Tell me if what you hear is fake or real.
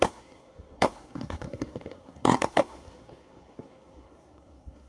fake